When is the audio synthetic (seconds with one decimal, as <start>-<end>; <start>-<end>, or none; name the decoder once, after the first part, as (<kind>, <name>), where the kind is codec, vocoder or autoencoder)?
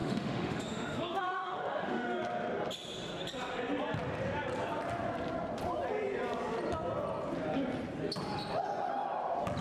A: 0.0-2.2 (autoencoder, DAC-VAE)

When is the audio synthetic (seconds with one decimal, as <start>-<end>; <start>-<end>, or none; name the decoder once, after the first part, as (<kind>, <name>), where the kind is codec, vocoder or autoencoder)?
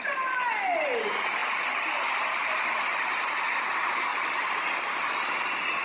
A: none